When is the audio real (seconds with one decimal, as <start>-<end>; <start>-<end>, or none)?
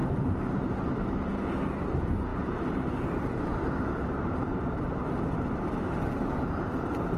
1.3-2.3; 6.6-7.2